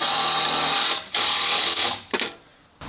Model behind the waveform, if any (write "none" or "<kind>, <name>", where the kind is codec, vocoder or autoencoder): none